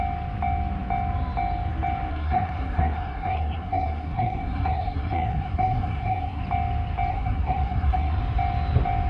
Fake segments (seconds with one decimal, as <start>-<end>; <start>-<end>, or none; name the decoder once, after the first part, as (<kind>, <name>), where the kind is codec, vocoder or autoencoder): 2.1-6.4 (codec, SNAC); 7.1-8.2